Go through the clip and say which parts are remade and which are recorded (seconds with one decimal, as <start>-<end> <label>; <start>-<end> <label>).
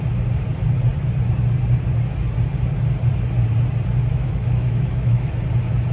0.0-4.1 recorded; 4.1-5.3 remade; 5.3-5.9 recorded